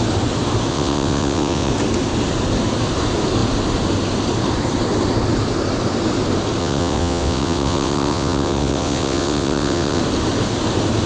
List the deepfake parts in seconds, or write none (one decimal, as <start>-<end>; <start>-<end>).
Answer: 0.7-1.7; 6.6-10.0